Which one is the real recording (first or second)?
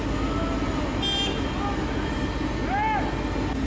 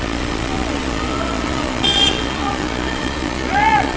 first